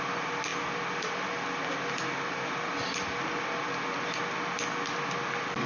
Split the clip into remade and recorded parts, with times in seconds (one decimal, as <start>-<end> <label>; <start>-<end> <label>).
0.0-5.7 recorded